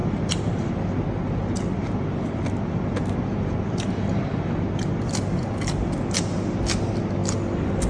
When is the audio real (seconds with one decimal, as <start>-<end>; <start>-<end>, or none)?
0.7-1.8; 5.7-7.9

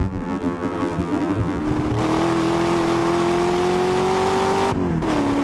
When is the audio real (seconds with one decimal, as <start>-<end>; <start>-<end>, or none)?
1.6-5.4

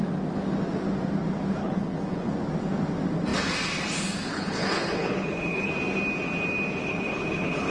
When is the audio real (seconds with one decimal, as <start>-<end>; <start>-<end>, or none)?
0.0-1.6; 2.3-4.3; 5.7-6.8

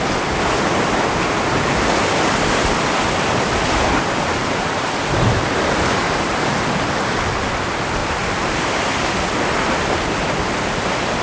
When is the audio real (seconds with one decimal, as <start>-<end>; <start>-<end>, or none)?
0.0-4.4; 6.3-8.0; 9.1-11.2